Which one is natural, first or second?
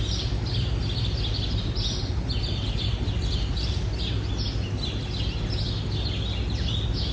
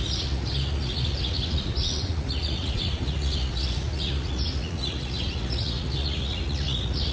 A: first